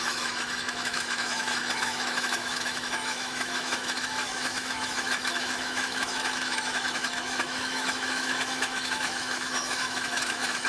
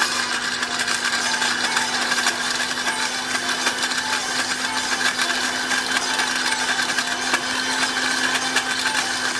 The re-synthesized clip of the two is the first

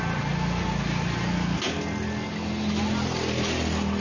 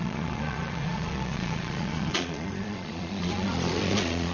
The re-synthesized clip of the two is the second